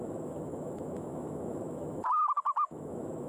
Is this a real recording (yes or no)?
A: no